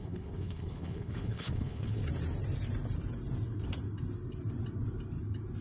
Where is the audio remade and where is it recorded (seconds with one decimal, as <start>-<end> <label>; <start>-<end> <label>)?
0.0-2.0 remade; 2.0-5.6 recorded